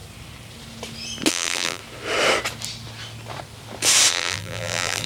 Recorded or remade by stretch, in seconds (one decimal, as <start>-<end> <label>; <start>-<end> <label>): 0.0-1.3 recorded; 1.3-1.8 remade; 1.8-4.1 recorded; 4.1-5.1 remade